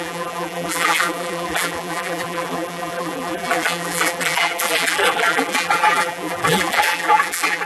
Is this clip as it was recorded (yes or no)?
no